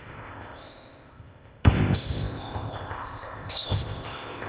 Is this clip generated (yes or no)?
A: yes